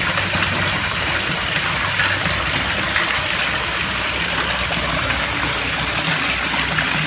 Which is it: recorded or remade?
recorded